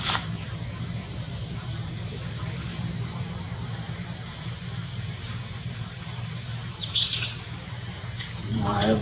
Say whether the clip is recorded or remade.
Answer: remade